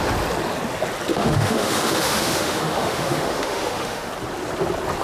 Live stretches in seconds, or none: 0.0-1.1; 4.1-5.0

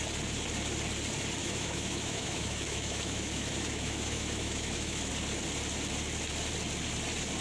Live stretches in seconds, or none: 0.0-1.4; 5.1-7.4

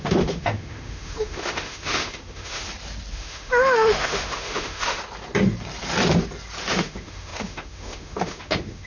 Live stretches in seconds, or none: 2.6-3.1; 5.0-6.7

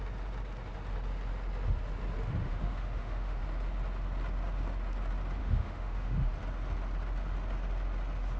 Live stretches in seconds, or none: 0.0-2.4; 3.4-5.4; 6.3-8.4

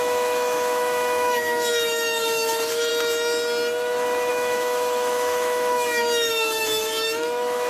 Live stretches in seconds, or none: 2.9-4.3

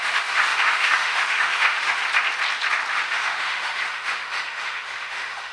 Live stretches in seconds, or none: 2.0-2.9

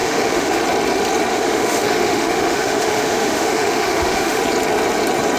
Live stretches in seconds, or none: 0.6-1.3; 4.4-5.4